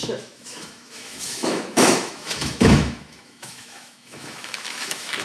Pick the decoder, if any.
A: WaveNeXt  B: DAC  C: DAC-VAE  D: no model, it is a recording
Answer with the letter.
C